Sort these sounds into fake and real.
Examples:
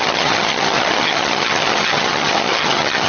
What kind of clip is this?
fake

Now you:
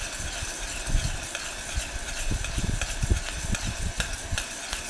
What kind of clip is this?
real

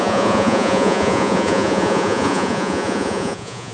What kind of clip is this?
fake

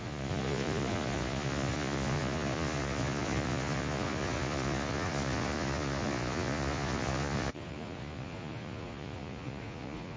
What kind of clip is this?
fake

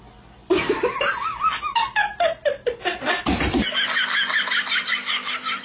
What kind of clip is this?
real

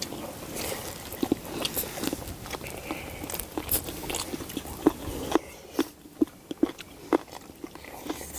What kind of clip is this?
real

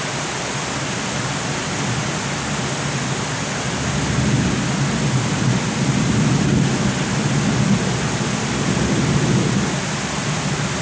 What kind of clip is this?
real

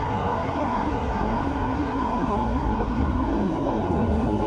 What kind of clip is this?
fake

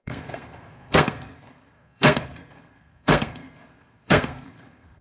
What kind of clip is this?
fake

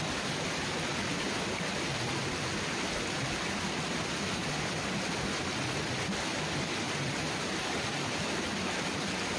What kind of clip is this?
real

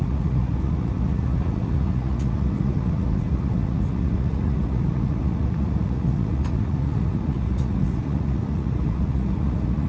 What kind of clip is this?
fake